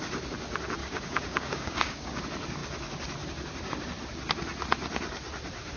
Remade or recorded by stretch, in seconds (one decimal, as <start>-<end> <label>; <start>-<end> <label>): 0.0-0.8 recorded; 0.8-2.2 remade; 2.2-5.8 recorded